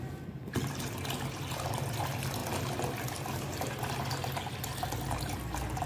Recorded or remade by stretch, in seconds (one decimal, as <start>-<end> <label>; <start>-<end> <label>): 0.0-5.9 recorded